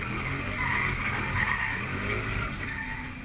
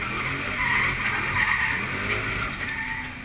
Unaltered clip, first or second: second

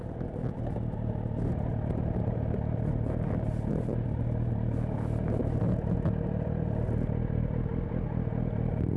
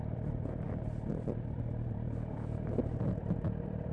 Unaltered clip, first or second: first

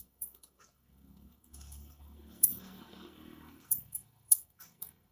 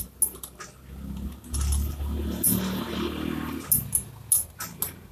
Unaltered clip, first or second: second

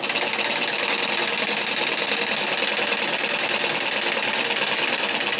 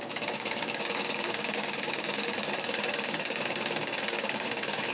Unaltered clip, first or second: first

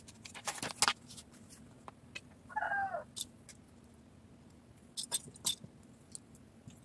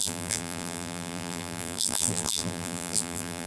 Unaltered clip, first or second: first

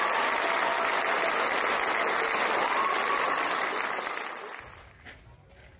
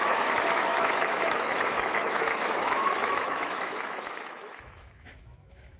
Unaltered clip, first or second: first